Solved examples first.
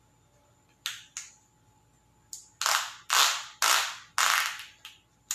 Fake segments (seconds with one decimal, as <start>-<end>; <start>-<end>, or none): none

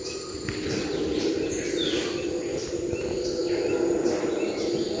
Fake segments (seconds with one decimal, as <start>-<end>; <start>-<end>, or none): none

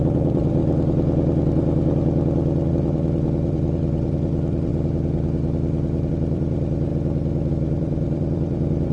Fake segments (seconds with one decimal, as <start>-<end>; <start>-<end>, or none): 0.0-0.6; 2.7-4.7; 6.1-6.9; 7.5-8.9

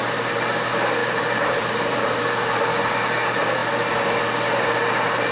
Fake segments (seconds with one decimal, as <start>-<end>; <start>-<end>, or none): 1.0-2.2